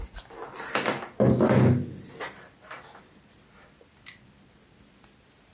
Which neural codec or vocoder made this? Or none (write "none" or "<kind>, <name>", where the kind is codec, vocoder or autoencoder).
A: none